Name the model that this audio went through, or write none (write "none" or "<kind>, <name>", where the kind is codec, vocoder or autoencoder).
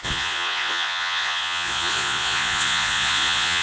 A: vocoder, Vocos